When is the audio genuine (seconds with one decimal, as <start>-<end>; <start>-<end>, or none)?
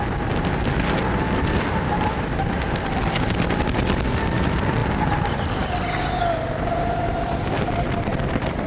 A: 0.0-8.7